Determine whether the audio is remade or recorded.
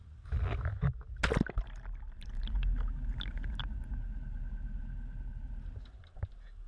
recorded